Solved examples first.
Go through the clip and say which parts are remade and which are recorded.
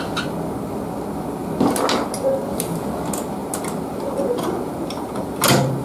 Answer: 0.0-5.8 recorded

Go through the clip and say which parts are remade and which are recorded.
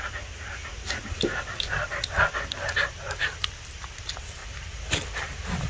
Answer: 0.0-5.7 recorded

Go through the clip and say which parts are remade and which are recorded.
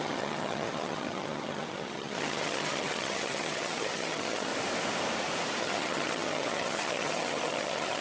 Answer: 0.0-4.5 remade; 4.5-5.6 recorded; 5.6-8.0 remade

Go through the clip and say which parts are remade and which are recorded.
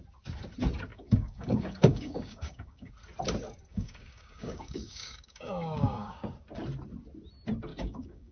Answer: 0.0-0.9 recorded; 0.9-2.9 remade; 2.9-3.7 recorded; 3.7-6.3 remade; 6.3-7.7 recorded; 7.7-8.3 remade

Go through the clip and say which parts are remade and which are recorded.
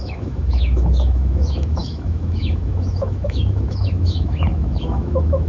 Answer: 0.0-5.5 remade